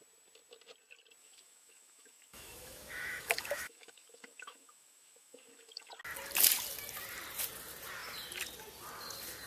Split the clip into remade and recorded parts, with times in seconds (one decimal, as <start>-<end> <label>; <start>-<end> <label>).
0.0-1.2 recorded; 1.2-5.9 remade; 5.9-9.5 recorded